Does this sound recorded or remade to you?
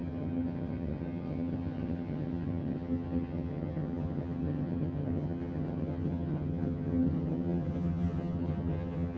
remade